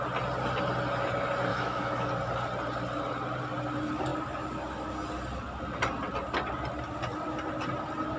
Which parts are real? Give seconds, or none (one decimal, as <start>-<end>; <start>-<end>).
0.0-1.5; 2.1-8.2